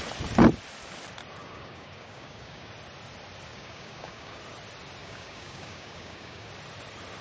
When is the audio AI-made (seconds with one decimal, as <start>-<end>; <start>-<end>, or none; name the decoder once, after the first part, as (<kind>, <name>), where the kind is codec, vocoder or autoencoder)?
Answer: 1.4-2.7 (codec, DAC); 3.5-4.4; 5.0-6.5